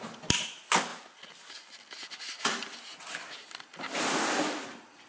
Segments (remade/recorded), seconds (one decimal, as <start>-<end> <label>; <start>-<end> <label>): 0.0-5.1 recorded